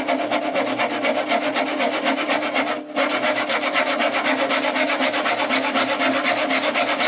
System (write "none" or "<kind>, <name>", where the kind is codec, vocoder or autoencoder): none